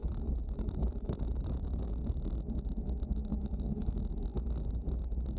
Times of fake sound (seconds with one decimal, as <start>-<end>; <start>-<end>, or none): 0.0-1.8; 3.2-4.0